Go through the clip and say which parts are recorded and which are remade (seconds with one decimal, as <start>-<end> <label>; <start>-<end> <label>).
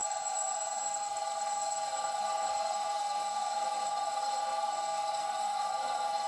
0.0-6.3 remade